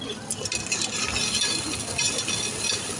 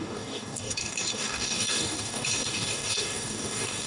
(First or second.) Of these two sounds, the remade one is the second